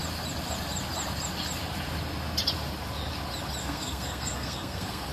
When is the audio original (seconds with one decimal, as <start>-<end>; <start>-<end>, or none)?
0.0-3.6